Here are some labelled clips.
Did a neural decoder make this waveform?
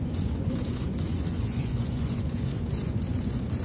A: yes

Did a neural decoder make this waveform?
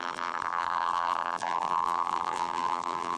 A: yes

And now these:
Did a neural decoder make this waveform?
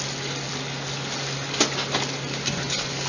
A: no